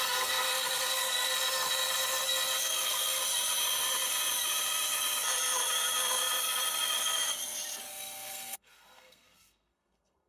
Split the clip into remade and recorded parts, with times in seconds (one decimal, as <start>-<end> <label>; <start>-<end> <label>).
0.0-1.3 remade; 1.3-2.6 recorded; 2.6-3.2 remade; 3.2-7.9 recorded; 7.9-10.3 remade